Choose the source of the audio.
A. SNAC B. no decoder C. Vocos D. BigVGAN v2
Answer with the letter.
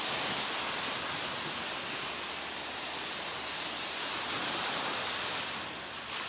B